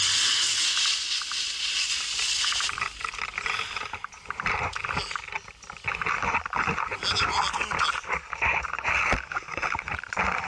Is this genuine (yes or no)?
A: yes